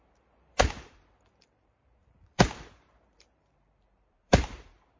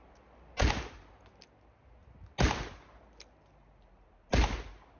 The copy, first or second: first